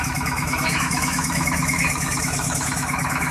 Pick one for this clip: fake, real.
fake